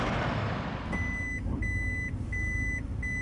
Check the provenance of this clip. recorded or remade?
recorded